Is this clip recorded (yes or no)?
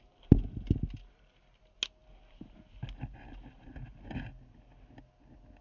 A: yes